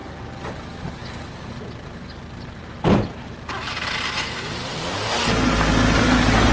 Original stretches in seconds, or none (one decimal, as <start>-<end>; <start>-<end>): 0.0-6.5